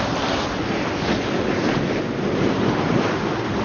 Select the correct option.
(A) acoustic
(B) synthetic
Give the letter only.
A